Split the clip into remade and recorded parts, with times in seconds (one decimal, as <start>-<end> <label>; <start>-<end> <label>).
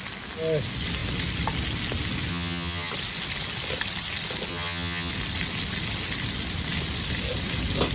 0.0-2.3 recorded; 2.3-2.9 remade; 2.9-4.5 recorded; 4.5-5.1 remade; 5.1-7.9 recorded